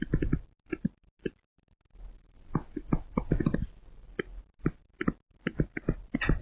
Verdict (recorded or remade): recorded